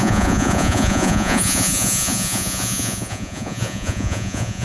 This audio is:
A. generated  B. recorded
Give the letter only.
A